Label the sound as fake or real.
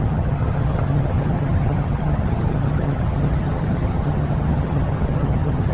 fake